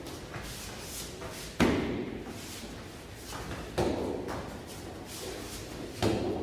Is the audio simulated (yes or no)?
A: no